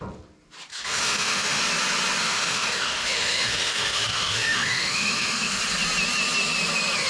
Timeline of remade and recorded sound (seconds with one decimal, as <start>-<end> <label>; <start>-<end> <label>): 0.0-0.7 recorded; 0.7-1.6 remade; 1.6-2.2 recorded; 2.2-5.6 remade; 5.6-7.1 recorded